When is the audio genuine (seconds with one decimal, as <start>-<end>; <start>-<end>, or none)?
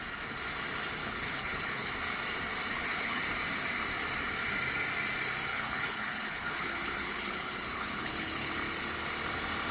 0.0-1.0; 1.9-2.7; 3.2-5.5; 8.5-9.7